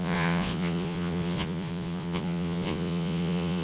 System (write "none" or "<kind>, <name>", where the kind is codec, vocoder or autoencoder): vocoder, Vocos